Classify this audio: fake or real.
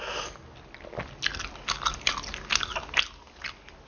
real